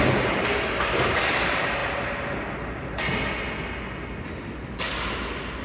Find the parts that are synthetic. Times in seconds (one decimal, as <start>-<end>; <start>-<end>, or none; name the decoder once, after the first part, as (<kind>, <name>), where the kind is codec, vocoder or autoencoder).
none